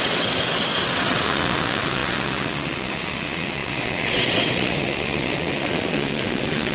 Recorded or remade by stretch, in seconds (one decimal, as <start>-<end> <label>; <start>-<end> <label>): 0.0-6.7 remade